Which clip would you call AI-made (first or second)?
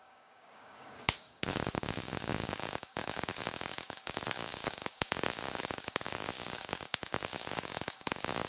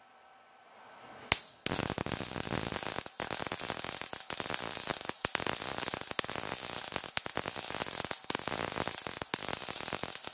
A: first